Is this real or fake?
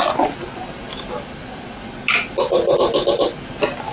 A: real